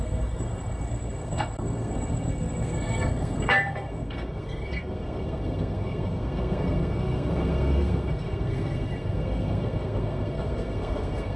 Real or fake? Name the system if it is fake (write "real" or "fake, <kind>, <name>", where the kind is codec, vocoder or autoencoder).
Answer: fake, codec, SNAC